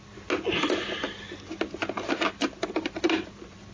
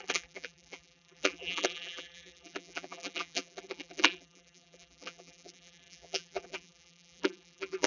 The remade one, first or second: second